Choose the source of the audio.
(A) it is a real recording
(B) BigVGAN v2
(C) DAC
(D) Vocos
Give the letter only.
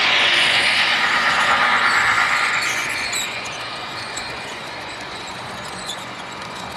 D